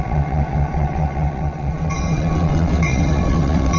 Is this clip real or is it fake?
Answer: fake